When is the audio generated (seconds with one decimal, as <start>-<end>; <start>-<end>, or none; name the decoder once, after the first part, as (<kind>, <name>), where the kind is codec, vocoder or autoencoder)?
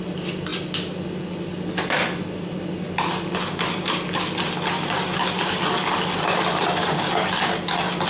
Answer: none